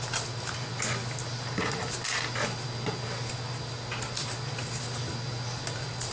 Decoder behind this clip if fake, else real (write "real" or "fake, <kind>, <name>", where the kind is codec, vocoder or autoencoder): real